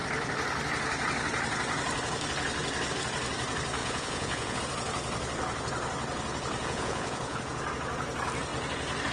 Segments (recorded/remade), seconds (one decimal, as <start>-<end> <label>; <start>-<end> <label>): 0.0-3.8 recorded; 3.8-4.6 remade; 4.6-6.6 recorded; 6.6-7.4 remade; 7.4-9.1 recorded